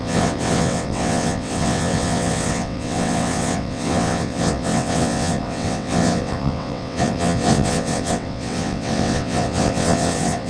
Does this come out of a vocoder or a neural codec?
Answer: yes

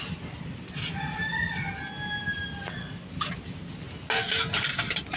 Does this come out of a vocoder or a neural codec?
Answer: no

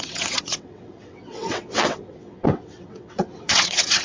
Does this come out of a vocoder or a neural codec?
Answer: yes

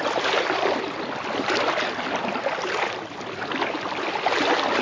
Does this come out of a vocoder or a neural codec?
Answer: no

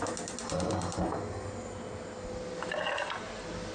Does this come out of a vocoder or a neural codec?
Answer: no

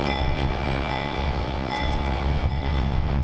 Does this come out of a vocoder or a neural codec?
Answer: yes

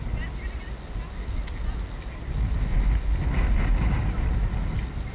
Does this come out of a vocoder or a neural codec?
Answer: no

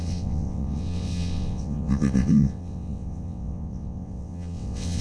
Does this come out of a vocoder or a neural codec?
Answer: yes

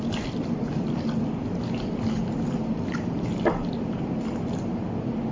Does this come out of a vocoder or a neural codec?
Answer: no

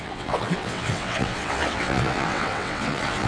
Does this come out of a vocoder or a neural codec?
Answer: yes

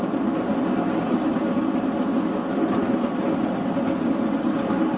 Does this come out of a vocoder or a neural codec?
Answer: no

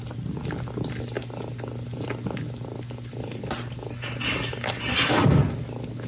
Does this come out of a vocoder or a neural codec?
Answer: no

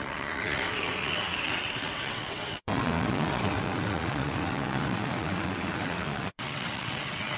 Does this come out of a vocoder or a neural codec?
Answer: yes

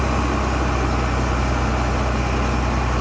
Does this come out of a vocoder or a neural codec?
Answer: no